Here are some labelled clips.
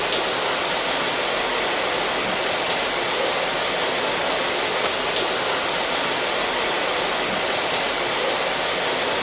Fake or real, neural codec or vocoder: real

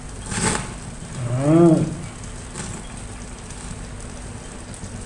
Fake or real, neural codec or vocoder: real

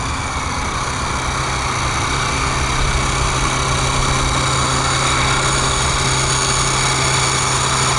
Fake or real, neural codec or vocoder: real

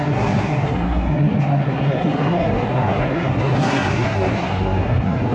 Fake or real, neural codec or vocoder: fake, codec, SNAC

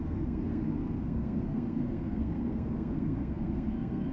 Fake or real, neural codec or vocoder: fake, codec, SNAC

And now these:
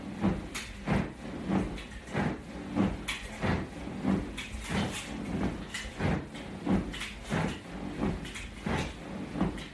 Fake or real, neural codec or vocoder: real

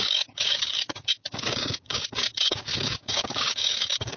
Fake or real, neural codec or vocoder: fake, codec, DAC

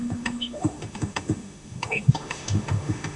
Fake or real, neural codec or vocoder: fake, autoencoder, DAC-VAE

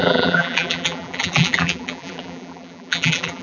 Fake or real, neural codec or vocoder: fake, vocoder, BigVGAN v2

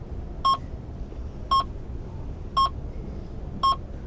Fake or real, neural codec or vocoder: real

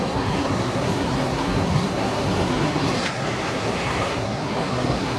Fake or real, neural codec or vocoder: fake, codec, SNAC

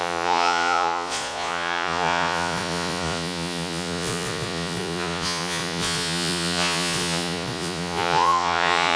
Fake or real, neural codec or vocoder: fake, vocoder, Vocos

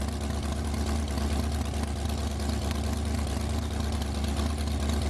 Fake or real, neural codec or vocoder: real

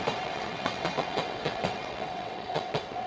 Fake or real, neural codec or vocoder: fake, vocoder, WaveNeXt